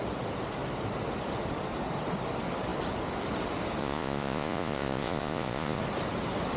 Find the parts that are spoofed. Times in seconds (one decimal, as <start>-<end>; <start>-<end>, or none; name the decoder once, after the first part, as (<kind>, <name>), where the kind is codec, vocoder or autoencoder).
3.8-5.8 (vocoder, Vocos)